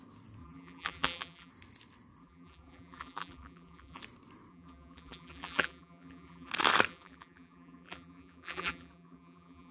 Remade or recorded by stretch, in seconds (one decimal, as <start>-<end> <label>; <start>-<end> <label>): 0.0-0.4 recorded; 0.4-1.5 remade; 1.5-2.2 recorded; 2.2-4.0 remade; 4.0-4.5 recorded; 4.5-6.5 remade; 6.5-6.9 recorded; 6.9-9.7 remade